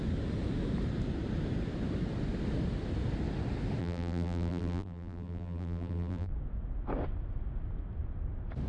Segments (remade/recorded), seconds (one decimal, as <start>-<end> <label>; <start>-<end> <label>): 0.0-3.8 recorded; 3.8-6.3 remade; 6.3-8.7 recorded